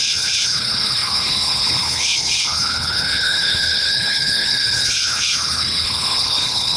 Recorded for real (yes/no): no